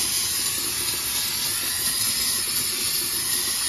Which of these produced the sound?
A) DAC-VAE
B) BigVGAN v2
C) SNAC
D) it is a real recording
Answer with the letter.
D